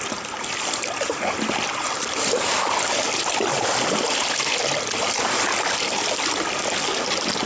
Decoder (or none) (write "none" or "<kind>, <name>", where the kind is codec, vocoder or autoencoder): none